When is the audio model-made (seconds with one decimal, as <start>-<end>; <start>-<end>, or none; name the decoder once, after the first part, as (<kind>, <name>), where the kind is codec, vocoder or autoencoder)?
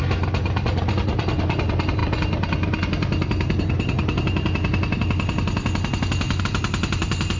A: none